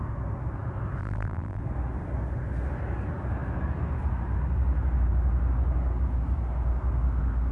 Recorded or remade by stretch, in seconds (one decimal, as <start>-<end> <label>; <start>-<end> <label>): 0.0-1.0 recorded; 1.0-1.6 remade; 1.6-7.5 recorded